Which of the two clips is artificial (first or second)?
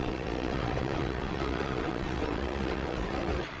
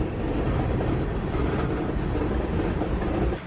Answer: first